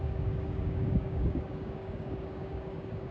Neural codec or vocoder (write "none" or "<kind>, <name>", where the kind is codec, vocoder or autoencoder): codec, DAC